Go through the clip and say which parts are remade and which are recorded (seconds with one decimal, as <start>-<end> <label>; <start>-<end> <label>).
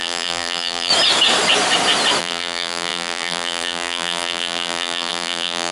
0.0-0.9 remade; 0.9-2.2 recorded; 2.2-5.7 remade